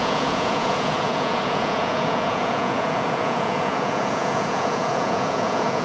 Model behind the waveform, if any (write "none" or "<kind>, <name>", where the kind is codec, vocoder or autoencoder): vocoder, Vocos